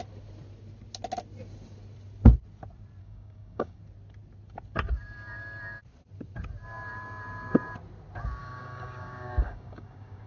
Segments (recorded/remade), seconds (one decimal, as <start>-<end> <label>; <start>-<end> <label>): 0.0-3.0 recorded; 3.0-3.8 remade; 3.8-8.4 recorded; 8.4-10.3 remade